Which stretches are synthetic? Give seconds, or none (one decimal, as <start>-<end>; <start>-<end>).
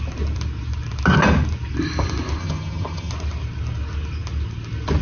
2.4-3.1